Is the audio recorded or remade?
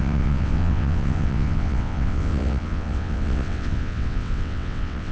remade